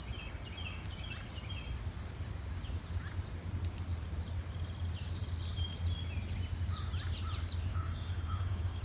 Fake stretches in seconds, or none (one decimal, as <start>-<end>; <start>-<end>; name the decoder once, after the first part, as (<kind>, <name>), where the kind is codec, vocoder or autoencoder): 7.7-8.8 (codec, DAC)